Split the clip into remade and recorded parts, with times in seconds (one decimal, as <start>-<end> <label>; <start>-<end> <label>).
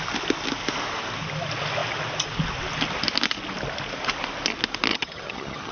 0.0-4.9 recorded; 4.9-5.7 remade